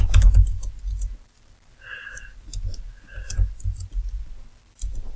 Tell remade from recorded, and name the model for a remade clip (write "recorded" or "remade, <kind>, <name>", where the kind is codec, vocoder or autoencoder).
recorded